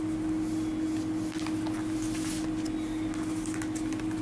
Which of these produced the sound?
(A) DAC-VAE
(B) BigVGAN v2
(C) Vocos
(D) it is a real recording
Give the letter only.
D